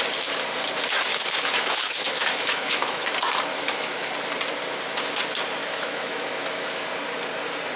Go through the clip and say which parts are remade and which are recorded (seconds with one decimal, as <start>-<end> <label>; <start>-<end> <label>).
0.0-1.1 recorded; 1.1-3.0 remade; 3.0-3.5 recorded; 3.5-4.1 remade; 4.1-5.6 recorded; 5.6-6.9 remade; 6.9-7.8 recorded